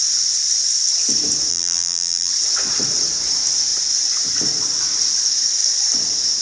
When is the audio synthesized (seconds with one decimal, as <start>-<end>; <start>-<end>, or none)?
1.5-2.3